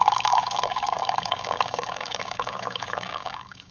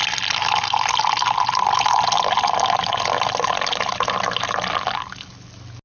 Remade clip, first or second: first